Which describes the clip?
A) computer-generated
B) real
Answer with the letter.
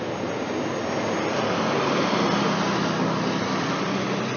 B